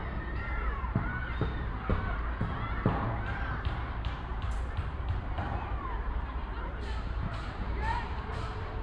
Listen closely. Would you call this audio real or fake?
fake